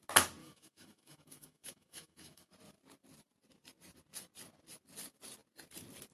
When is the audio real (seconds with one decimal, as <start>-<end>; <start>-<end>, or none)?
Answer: 0.0-0.4; 2.5-6.1